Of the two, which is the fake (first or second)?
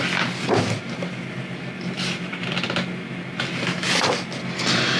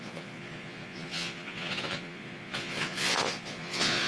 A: second